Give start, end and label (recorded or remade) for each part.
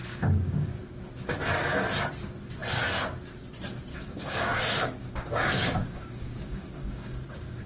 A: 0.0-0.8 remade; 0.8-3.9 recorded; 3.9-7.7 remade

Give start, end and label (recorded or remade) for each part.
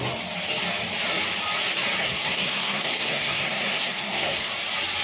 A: 0.0-2.0 recorded; 2.0-4.5 remade; 4.5-5.0 recorded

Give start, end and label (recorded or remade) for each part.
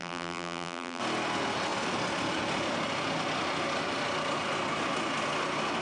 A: 0.0-1.0 remade; 1.0-5.8 recorded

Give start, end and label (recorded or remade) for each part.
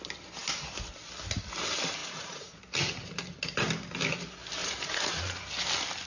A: 0.0-2.0 recorded; 2.0-2.6 remade; 2.6-4.6 recorded; 4.6-5.5 remade; 5.5-6.1 recorded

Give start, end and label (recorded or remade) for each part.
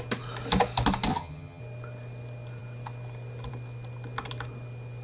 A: 0.0-1.1 recorded; 1.1-1.6 remade; 1.6-5.0 recorded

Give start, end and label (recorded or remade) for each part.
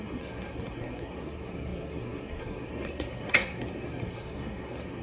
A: 0.0-5.0 remade